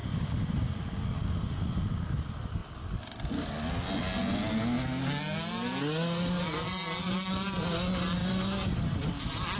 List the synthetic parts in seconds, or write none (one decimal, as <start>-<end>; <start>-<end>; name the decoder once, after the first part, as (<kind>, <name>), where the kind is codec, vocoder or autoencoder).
8.2-9.6 (vocoder, BigVGAN v2)